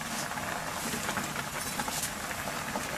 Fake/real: real